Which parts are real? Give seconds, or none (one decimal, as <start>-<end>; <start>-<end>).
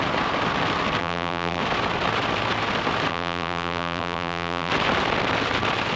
0.0-1.0; 1.6-3.1; 4.7-6.0